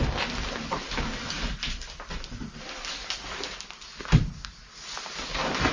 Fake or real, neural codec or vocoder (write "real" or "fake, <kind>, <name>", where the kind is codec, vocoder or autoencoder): real